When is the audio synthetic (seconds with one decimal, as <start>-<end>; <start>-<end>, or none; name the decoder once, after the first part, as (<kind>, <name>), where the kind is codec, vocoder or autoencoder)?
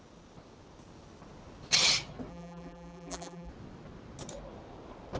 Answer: 2.3-3.5 (vocoder, BigVGAN v2)